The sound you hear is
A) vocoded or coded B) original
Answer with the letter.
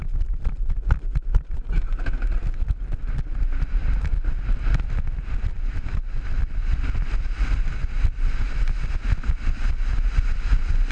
B